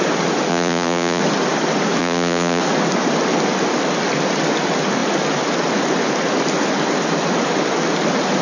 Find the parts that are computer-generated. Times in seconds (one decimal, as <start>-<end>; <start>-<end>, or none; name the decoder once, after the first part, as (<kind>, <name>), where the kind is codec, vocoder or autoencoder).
0.5-1.2 (vocoder, Vocos); 2.0-2.6